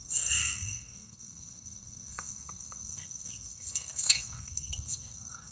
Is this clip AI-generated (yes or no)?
yes